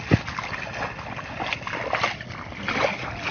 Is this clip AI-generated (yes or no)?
no